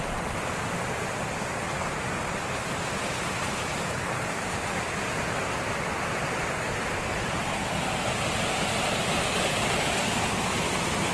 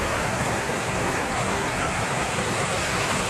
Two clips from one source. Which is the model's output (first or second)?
second